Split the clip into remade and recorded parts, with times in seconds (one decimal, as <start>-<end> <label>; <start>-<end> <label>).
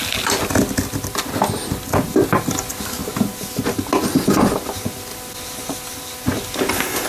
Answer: 0.0-7.1 recorded